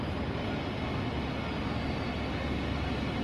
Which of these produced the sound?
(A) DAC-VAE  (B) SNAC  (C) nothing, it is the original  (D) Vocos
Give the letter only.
C